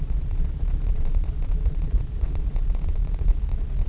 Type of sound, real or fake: fake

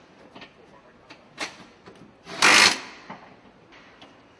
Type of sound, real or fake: real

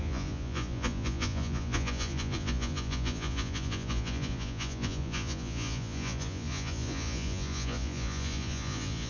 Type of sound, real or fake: fake